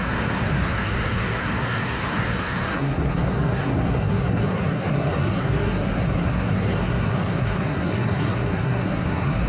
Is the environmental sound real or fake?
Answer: fake